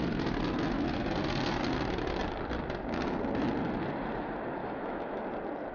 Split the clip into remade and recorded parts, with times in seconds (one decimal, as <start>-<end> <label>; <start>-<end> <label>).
0.0-4.6 recorded; 4.6-5.2 remade; 5.2-5.7 recorded